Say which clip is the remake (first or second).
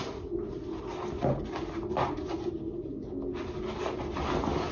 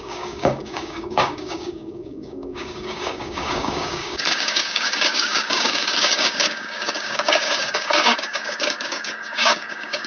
second